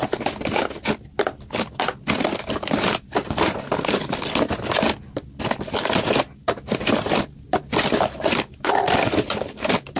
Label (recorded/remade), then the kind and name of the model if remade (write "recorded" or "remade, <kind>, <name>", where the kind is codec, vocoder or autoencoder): recorded